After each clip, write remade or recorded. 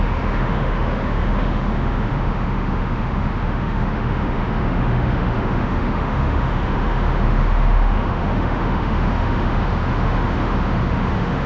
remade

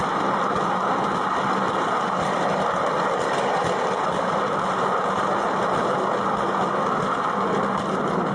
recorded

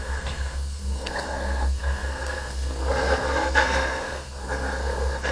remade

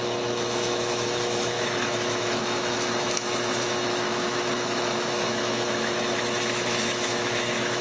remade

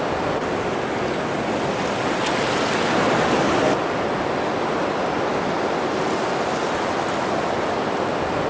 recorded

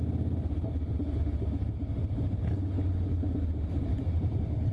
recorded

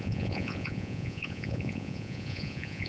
remade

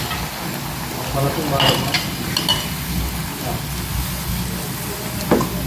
recorded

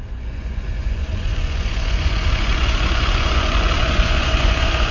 remade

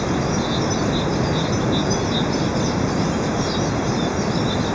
recorded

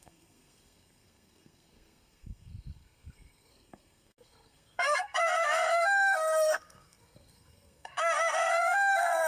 remade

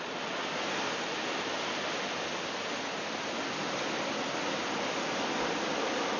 recorded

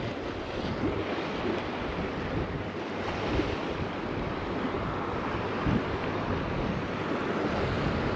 recorded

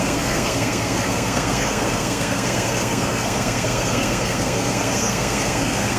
remade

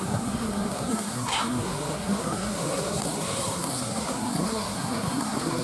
remade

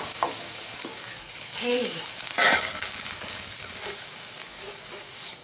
remade